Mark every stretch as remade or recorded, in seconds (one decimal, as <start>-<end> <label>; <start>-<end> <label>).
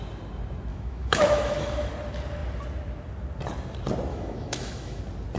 0.0-0.7 recorded; 0.7-1.9 remade; 1.9-4.1 recorded; 4.1-5.0 remade; 5.0-5.4 recorded